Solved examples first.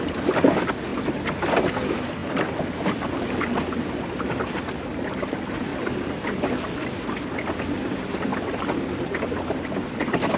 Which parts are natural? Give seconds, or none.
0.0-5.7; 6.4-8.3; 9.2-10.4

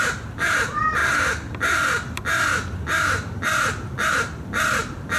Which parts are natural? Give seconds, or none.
0.0-5.2

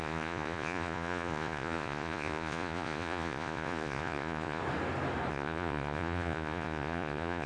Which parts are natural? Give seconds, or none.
4.6-5.3

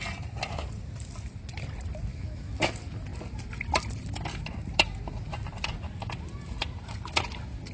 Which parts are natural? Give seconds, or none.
0.0-2.1; 2.7-7.7

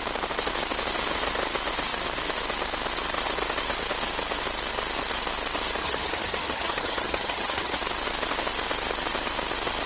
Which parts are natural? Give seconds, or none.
0.0-5.8; 7.8-9.9

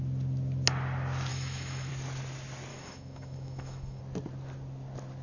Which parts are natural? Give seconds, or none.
0.0-1.3; 1.9-2.7; 4.0-5.2

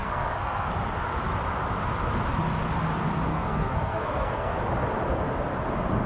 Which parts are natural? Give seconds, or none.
0.7-3.3; 4.6-6.1

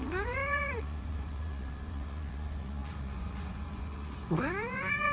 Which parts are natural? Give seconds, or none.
none